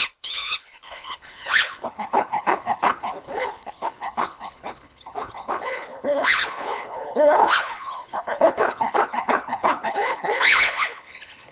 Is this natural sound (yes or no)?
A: no